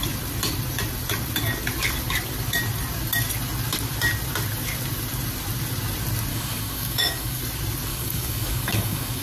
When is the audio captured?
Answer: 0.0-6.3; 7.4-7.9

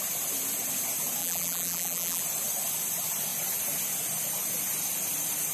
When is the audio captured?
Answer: 0.0-1.2; 2.2-5.5

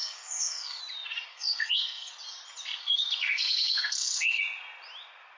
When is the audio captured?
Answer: 0.8-1.3; 2.1-2.8; 4.4-5.4

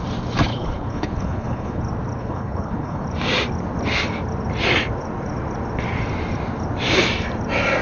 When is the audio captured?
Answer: 0.0-0.5; 1.8-2.2; 3.0-7.8

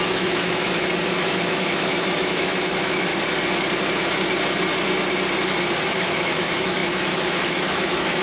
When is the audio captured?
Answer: 3.1-5.8

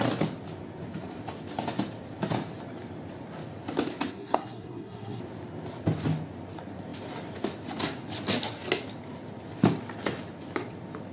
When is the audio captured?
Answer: 0.0-4.1; 5.2-11.1

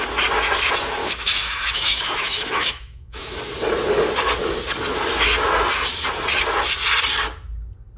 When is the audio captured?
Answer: 0.0-1.0; 3.4-8.0